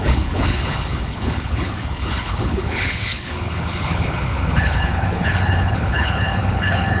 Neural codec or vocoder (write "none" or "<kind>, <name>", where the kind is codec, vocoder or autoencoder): codec, HILCodec